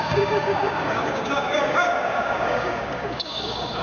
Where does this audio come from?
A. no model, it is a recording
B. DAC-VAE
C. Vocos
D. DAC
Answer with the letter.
D